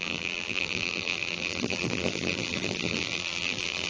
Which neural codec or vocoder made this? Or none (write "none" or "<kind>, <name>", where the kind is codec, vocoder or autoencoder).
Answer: vocoder, BigVGAN v2